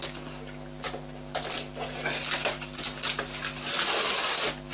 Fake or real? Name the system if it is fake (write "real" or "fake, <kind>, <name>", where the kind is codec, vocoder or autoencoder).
real